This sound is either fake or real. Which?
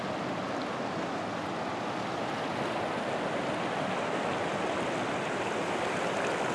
real